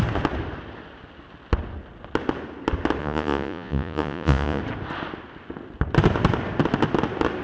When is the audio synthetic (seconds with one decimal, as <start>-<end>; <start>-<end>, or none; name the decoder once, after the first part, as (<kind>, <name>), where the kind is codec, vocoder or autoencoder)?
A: 3.0-4.6 (vocoder, Vocos)